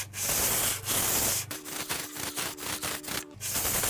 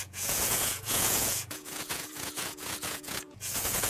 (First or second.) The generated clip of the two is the second